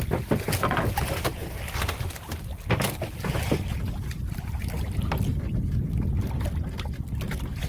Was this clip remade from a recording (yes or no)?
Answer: no